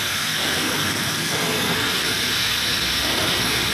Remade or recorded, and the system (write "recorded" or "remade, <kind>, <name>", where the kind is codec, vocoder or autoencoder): remade, codec, SNAC